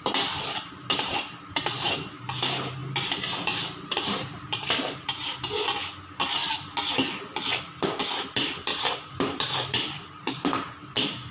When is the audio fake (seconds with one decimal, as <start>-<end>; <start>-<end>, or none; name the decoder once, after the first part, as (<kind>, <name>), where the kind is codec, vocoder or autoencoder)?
0.0-2.8 (vocoder, BigVGAN v2); 3.4-5.3; 8.0-11.3